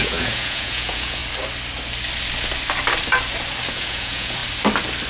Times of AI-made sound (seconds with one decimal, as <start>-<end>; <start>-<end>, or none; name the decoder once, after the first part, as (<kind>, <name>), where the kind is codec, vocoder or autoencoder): 0.0-1.2 (vocoder, Vocos); 3.7-4.4

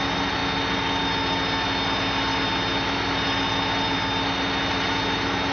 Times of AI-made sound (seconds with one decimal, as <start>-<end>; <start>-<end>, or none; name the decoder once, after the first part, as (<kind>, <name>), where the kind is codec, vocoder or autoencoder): none

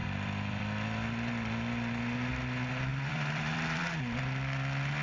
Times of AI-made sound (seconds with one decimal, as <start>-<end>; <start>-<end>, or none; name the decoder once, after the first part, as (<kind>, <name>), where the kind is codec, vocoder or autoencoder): 0.0-0.6 (vocoder, BigVGAN v2); 2.9-3.8